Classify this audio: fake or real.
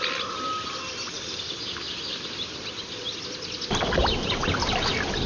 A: real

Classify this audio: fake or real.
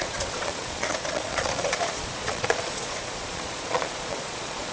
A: fake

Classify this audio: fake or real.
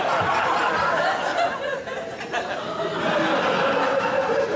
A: real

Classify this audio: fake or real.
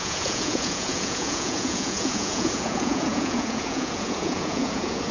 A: fake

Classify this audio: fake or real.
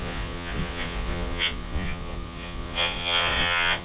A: fake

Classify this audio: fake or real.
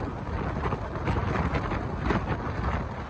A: real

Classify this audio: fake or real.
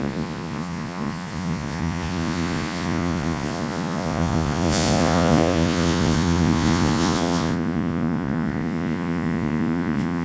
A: fake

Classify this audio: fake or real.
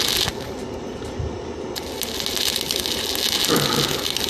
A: real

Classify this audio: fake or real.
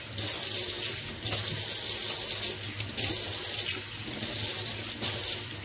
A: real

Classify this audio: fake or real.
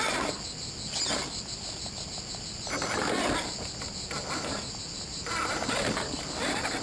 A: real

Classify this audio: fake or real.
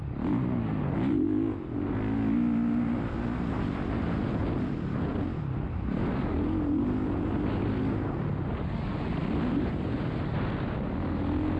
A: real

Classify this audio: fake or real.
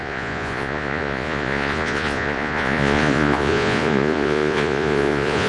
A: fake